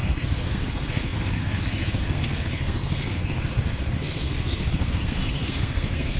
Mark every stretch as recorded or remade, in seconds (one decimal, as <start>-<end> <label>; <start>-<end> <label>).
0.0-6.2 remade